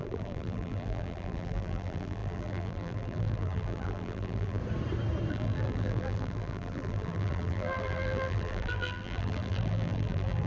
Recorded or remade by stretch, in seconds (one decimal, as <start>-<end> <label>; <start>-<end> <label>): 0.0-4.6 remade; 4.6-5.3 recorded; 5.3-10.5 remade